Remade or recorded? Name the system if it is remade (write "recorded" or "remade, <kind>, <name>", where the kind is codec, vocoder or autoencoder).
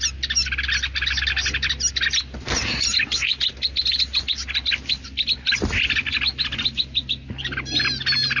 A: recorded